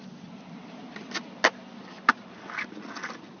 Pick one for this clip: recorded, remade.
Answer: recorded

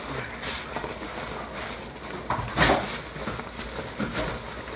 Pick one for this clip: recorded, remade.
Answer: recorded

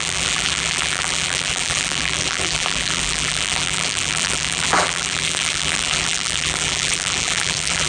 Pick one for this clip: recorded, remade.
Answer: remade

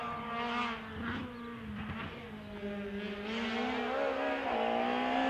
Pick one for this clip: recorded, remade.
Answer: recorded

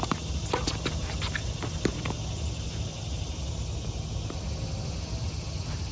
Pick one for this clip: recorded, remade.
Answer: recorded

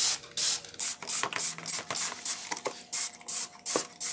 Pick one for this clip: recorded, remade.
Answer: recorded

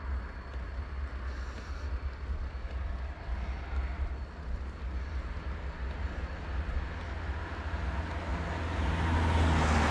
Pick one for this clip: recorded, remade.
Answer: recorded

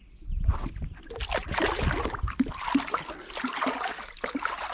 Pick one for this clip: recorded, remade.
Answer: recorded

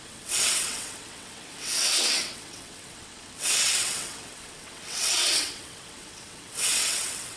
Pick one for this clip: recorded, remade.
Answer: remade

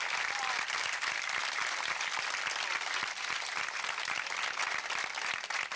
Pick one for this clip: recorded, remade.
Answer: recorded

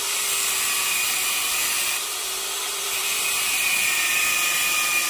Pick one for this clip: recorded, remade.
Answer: remade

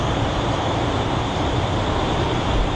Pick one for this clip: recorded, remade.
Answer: remade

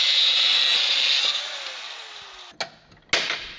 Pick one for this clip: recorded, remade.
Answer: recorded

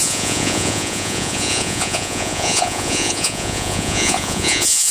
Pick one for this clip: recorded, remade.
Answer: remade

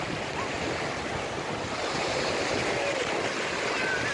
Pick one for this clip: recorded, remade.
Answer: recorded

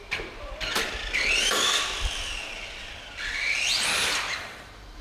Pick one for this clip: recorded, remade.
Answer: recorded